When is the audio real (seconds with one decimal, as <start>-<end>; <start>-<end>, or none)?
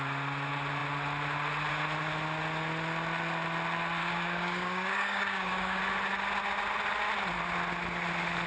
0.0-4.0; 5.8-8.5